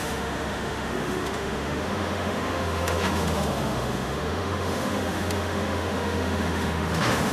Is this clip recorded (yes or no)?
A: no